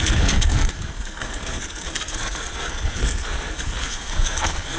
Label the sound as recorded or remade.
remade